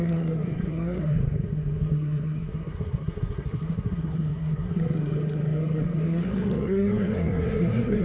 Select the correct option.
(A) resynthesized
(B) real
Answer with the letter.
A